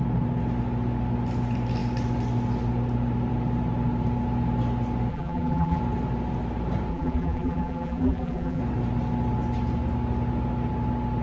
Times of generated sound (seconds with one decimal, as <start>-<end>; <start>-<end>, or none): 5.1-5.8; 6.9-8.6